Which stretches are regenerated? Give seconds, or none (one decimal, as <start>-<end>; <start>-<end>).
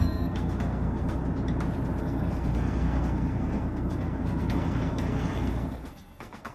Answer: 0.0-1.2; 2.0-6.5